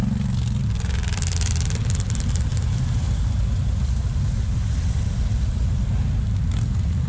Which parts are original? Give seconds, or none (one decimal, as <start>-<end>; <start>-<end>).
0.0-7.1